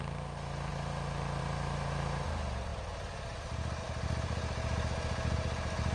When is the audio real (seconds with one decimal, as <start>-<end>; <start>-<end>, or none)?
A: 0.7-1.4